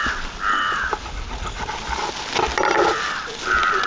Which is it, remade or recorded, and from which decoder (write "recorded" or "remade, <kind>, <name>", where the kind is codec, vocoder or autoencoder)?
recorded